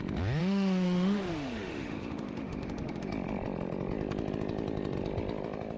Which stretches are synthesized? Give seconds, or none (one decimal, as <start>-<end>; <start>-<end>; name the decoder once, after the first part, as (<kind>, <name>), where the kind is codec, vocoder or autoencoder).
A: 0.4-3.1 (autoencoder, DAC-VAE)